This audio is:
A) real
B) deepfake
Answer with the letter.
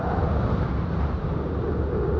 A